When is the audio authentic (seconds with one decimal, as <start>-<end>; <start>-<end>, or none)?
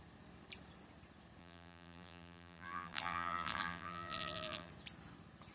0.0-1.4; 4.7-5.5